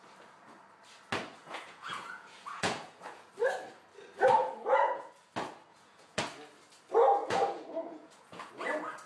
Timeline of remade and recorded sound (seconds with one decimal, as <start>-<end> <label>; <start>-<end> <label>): 0.0-1.4 recorded; 1.4-3.3 remade; 3.3-4.4 recorded; 4.4-5.1 remade; 5.1-5.7 recorded; 5.7-6.2 remade; 6.2-7.2 recorded; 7.2-8.5 remade; 8.5-9.1 recorded